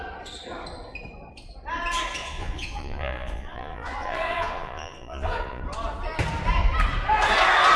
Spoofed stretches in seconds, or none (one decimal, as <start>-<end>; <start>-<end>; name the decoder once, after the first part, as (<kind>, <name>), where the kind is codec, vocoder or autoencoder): 2.2-5.6 (vocoder, Vocos)